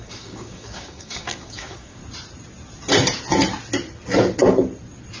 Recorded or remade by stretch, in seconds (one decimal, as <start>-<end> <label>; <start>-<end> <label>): 0.0-2.0 remade; 2.0-5.2 recorded